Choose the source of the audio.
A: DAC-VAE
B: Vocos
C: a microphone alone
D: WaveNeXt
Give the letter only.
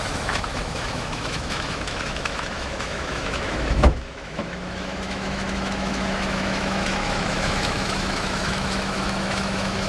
A